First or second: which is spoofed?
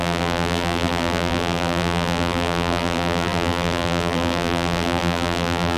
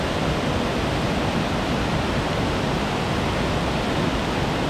first